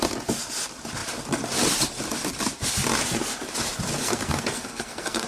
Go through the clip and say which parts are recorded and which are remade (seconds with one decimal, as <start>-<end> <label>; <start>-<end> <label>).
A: 0.0-4.0 recorded; 4.0-5.3 remade